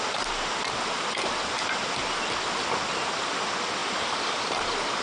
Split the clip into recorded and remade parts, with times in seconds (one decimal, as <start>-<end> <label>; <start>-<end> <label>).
0.0-5.0 recorded